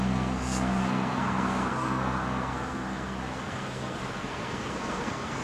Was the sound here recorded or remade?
remade